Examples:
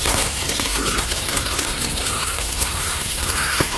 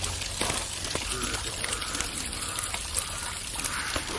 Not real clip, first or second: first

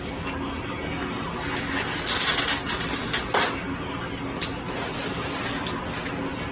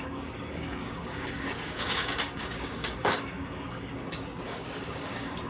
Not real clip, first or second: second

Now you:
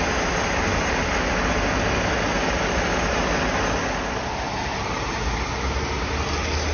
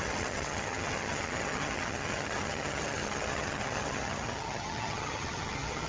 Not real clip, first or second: second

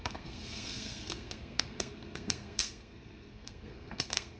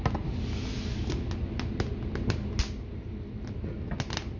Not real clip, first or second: first